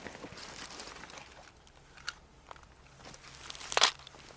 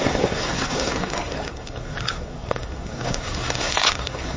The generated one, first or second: second